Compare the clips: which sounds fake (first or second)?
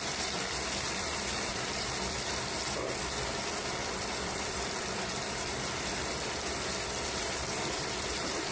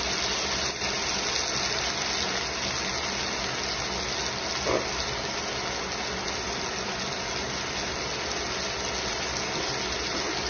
first